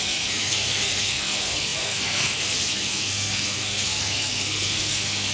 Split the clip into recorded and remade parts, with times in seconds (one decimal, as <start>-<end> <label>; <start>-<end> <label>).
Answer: 0.0-5.3 remade